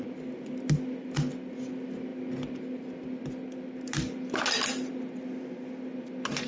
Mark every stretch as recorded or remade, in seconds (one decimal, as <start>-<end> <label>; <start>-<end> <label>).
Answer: 0.0-6.5 recorded